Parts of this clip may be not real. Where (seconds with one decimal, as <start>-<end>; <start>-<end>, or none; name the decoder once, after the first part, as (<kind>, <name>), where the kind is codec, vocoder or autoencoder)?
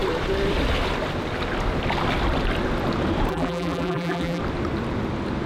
3.3-4.4 (vocoder, BigVGAN v2)